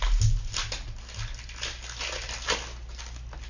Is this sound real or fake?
real